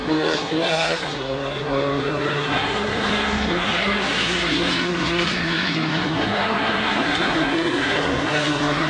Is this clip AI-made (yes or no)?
yes